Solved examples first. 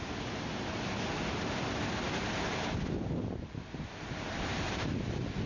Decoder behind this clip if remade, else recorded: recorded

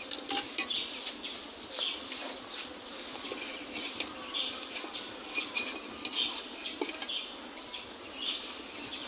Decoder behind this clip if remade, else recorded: recorded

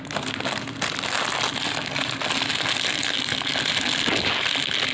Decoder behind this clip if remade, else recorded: recorded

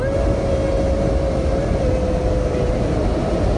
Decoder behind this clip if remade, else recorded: recorded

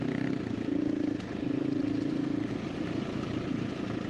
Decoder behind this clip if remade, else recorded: recorded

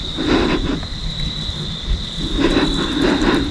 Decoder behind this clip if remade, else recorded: recorded